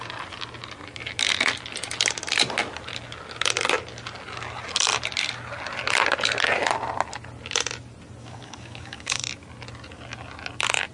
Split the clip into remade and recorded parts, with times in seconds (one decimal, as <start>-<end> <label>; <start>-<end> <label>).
0.0-8.2 recorded; 8.2-9.2 remade; 9.2-10.9 recorded